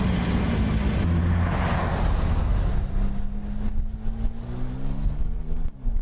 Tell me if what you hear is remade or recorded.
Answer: recorded